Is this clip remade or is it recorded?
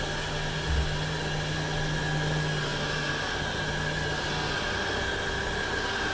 recorded